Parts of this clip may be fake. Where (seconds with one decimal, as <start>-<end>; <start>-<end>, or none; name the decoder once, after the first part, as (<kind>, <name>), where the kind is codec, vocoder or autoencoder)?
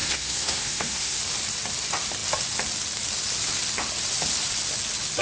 0.0-1.2 (codec, SNAC)